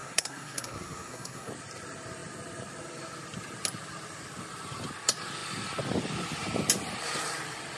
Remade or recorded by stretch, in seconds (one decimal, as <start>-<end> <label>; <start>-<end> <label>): 0.0-1.5 remade; 1.5-7.8 recorded